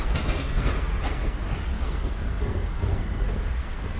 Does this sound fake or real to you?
fake